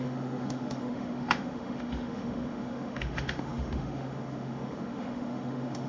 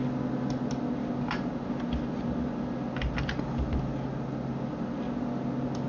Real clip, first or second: second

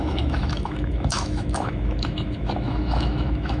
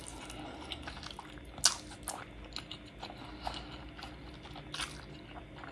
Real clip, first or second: second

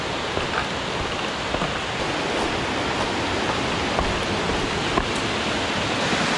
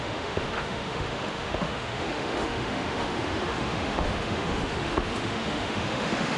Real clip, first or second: first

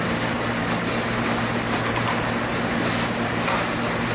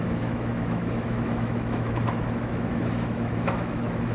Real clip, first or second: first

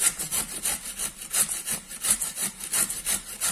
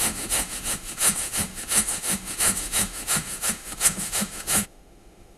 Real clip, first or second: first